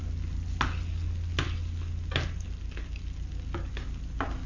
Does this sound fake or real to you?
real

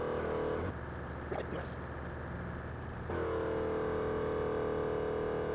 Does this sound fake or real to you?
real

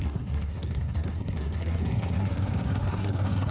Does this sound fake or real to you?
fake